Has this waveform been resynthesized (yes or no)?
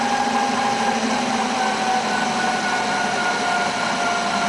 no